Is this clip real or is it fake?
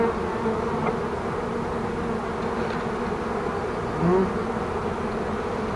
real